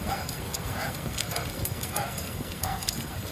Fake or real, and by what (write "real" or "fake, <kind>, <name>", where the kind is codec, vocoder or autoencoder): fake, codec, SNAC